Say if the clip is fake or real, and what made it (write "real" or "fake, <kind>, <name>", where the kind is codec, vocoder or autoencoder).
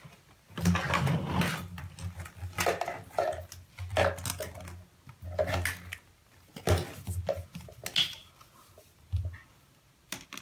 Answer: real